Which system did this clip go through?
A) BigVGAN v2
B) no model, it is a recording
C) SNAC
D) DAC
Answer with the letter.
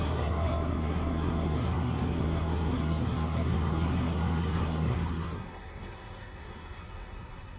C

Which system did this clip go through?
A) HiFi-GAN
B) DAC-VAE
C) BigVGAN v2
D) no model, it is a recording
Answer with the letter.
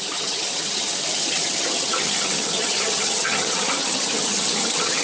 A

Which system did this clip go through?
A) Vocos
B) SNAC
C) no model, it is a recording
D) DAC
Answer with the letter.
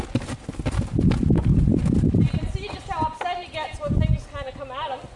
C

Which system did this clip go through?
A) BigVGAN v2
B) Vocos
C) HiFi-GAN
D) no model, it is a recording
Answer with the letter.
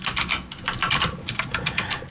D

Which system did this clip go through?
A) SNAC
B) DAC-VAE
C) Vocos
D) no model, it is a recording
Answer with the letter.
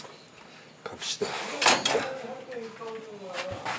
D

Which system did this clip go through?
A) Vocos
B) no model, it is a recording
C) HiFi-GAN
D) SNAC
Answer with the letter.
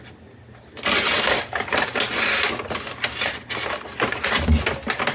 B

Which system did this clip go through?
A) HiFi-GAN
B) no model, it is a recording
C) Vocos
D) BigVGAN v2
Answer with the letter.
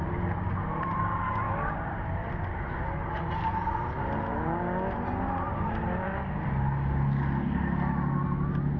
B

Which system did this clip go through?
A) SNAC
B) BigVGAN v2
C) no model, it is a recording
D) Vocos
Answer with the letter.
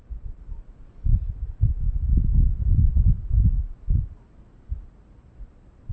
C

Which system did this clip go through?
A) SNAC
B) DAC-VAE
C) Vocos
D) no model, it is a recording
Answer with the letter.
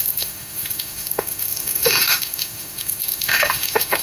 B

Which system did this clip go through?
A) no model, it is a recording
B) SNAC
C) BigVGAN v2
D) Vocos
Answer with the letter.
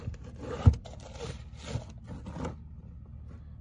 A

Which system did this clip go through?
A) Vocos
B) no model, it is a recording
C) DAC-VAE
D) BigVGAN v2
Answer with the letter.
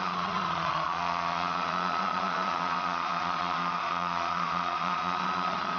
A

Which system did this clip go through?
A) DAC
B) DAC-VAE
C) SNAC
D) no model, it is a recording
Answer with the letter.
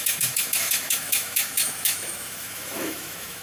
B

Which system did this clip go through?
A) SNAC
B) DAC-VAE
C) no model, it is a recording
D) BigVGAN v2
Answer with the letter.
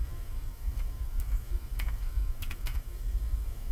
A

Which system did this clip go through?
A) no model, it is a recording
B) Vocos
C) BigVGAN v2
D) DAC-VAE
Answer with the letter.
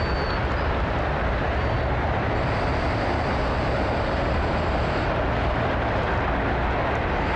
A